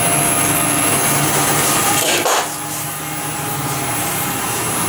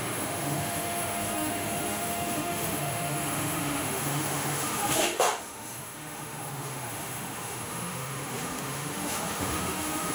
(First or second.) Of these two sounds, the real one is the first